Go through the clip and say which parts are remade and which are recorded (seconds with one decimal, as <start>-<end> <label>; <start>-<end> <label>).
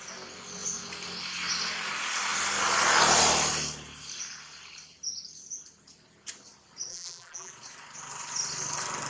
0.0-6.9 recorded; 6.9-7.5 remade; 7.5-9.1 recorded